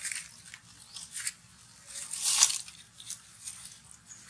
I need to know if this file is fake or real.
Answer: real